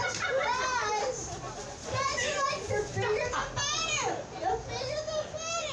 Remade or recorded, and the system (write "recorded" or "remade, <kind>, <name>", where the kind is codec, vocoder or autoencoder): recorded